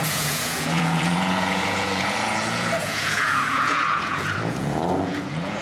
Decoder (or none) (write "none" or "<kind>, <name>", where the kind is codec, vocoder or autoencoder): vocoder, Vocos